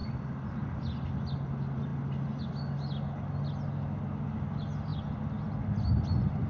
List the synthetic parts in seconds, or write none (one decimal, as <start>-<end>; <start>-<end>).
none